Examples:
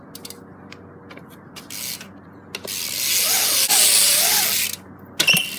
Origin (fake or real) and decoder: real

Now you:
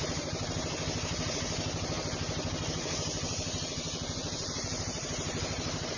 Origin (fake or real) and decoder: fake, vocoder, BigVGAN v2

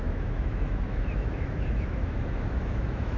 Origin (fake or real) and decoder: fake, autoencoder, DAC-VAE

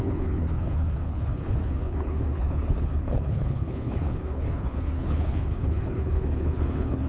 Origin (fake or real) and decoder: fake, codec, HILCodec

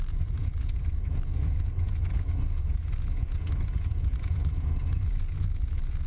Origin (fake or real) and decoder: fake, vocoder, Vocos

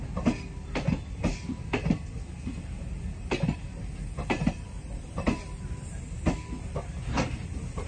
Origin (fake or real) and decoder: real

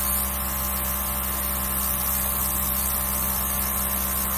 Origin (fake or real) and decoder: real